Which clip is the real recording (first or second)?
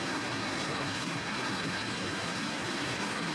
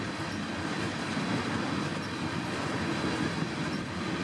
second